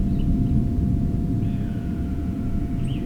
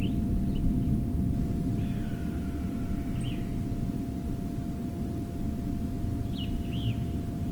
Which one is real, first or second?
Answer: second